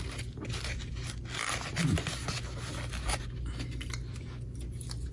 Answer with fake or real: real